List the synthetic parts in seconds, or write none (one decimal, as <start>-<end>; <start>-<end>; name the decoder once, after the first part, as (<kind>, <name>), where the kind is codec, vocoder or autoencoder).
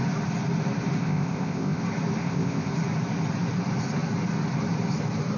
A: 1.0-1.8 (codec, ZipCodec); 2.2-2.7